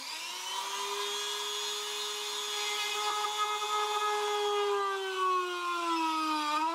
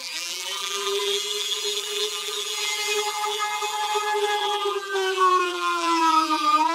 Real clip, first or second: first